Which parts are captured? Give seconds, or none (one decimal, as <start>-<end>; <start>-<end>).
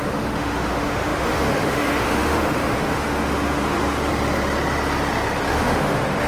4.1-5.5